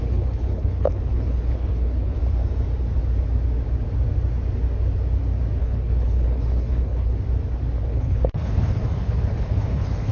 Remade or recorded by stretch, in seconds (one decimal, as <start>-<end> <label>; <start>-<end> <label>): 0.0-2.2 remade; 2.2-5.6 recorded; 5.6-7.1 remade; 7.1-7.8 recorded; 7.8-10.1 remade